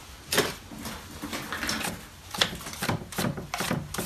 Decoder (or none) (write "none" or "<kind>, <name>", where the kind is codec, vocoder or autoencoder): none